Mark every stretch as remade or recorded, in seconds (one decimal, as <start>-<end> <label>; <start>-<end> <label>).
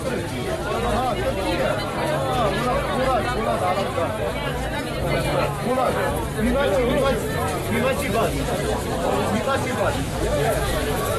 0.0-5.3 recorded; 5.3-6.1 remade; 6.1-9.7 recorded; 9.7-11.2 remade